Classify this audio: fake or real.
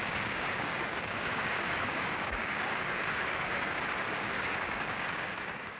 fake